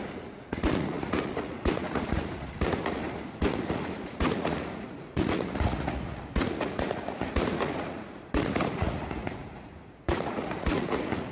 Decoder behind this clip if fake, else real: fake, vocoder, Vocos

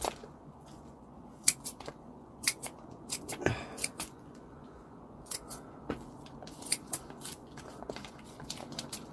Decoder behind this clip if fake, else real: fake, vocoder, Vocos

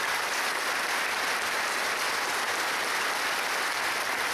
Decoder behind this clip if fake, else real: real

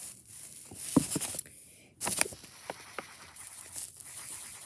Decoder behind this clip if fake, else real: real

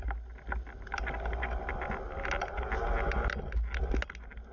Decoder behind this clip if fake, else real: real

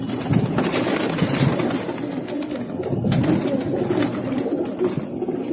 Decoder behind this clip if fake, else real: real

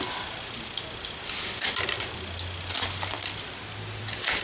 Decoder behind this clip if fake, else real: real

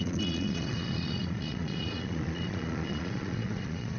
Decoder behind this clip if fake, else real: fake, vocoder, Vocos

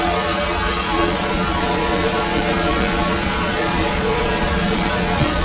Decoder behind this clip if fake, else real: fake, vocoder, Vocos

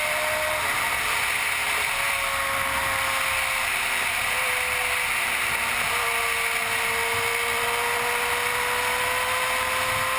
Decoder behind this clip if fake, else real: real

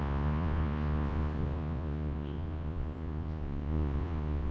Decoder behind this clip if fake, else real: fake, vocoder, Vocos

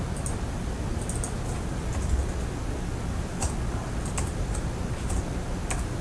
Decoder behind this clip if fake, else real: real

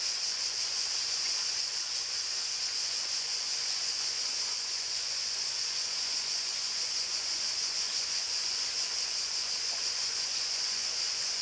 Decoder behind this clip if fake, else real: fake, vocoder, Vocos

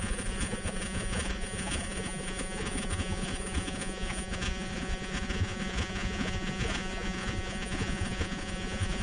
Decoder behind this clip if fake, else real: fake, vocoder, Vocos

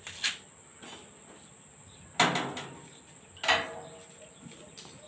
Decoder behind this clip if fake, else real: real